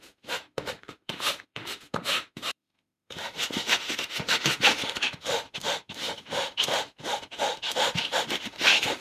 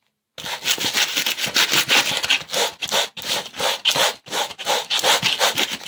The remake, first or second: first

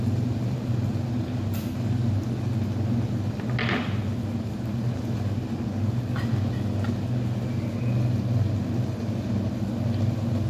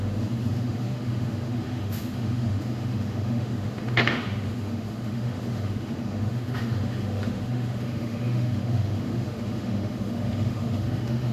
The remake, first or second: second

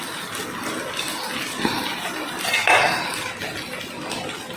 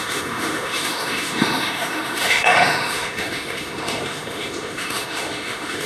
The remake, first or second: second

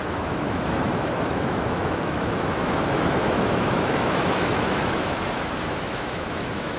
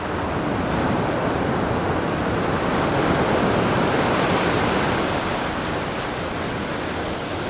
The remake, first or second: first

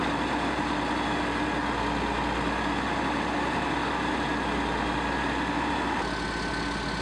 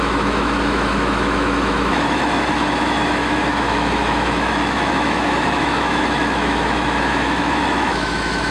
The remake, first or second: second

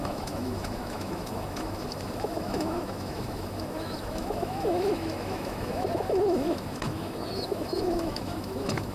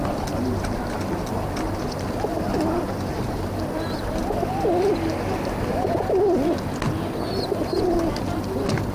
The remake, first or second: first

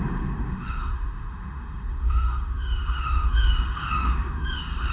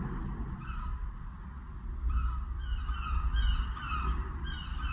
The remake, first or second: first